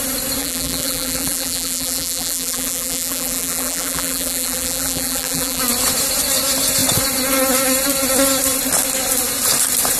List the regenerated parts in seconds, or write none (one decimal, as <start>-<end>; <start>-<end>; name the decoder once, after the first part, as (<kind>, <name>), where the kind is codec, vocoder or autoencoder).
0.4-5.6 (vocoder, BigVGAN v2)